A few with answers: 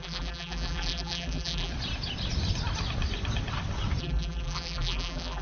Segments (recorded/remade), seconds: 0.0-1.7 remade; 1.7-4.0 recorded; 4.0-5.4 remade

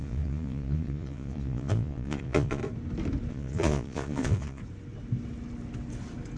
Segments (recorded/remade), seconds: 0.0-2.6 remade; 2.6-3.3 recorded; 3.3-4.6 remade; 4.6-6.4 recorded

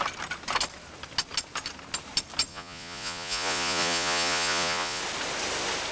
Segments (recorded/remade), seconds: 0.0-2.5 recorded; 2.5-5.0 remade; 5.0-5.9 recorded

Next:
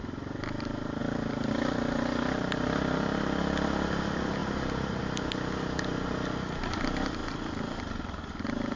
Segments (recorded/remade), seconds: 0.0-4.4 recorded; 4.4-5.0 remade; 5.0-8.8 recorded

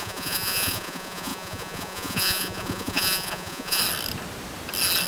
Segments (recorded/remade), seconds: 0.0-3.8 remade; 3.8-5.1 recorded